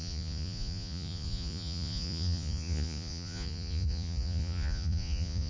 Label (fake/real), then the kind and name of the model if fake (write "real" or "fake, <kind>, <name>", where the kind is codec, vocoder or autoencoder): fake, vocoder, Vocos